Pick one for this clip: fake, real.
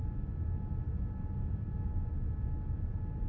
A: real